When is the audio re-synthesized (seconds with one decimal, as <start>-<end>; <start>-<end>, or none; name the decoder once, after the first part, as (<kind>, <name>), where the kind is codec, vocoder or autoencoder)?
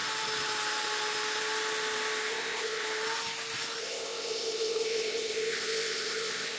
2.3-2.8 (codec, ZipCodec); 3.8-6.6